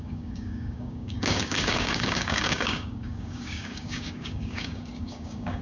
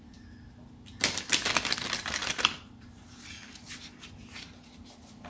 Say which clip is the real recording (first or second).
second